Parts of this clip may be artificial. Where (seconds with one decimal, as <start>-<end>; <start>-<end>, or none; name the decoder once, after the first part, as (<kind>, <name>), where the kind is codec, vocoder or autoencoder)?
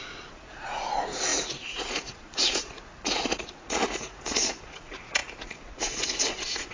0.0-6.7 (vocoder, Vocos)